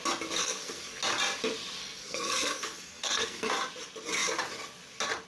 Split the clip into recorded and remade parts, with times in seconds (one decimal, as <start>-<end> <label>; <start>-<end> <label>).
0.0-0.4 recorded; 0.4-1.0 remade; 1.0-1.8 recorded; 1.8-3.5 remade; 3.5-5.3 recorded